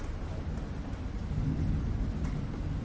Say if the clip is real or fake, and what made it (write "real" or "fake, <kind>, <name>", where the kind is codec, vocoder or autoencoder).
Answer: real